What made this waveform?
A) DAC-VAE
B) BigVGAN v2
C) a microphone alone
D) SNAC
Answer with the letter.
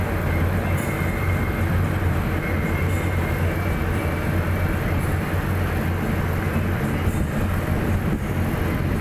C